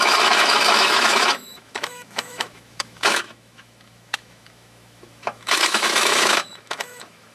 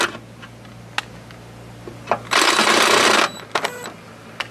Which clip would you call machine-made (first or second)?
first